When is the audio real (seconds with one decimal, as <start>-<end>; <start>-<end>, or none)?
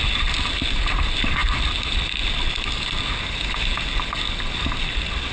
0.0-5.3